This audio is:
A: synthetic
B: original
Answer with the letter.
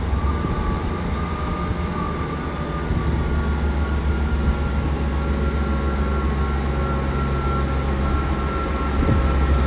B